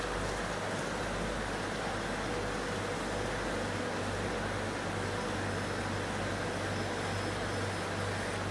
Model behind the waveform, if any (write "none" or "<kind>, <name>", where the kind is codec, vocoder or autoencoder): none